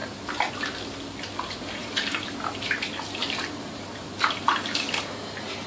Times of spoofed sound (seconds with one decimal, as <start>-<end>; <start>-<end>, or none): 1.8-2.7; 3.2-4.1